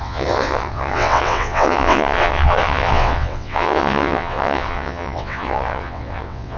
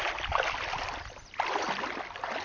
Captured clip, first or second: second